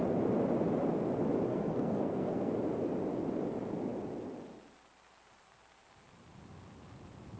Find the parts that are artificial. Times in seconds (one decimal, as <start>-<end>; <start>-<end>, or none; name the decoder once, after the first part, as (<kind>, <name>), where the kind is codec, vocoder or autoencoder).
1.5-2.5 (codec, SNAC)

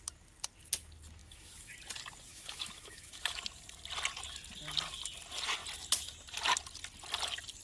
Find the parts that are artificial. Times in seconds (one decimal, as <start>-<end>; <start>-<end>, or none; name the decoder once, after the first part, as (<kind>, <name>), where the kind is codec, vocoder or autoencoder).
1.2-1.7 (autoencoder, DAC-VAE); 2.3-3.4

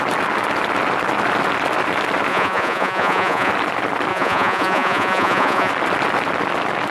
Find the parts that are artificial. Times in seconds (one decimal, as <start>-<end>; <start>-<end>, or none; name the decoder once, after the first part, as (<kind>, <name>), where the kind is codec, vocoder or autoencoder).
2.3-3.5 (vocoder, Vocos); 4.1-5.7

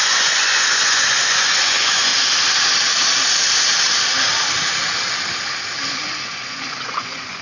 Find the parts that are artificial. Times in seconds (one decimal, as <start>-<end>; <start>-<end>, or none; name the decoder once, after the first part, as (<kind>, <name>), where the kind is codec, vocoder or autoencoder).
0.0-2.1 (vocoder, Vocos); 5.9-7.4

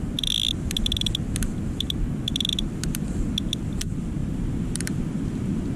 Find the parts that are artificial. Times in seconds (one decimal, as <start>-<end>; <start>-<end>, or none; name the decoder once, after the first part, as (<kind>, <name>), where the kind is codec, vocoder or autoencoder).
4.2-5.0 (vocoder, BigVGAN v2)

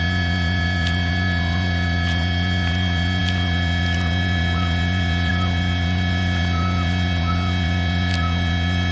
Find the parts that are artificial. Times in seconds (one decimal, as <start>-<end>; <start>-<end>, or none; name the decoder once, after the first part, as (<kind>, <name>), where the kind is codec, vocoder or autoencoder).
none

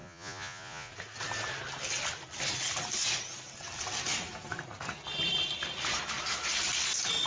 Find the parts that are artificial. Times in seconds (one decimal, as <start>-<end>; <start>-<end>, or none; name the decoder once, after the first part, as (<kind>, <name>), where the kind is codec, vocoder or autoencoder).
0.0-0.9 (vocoder, Vocos)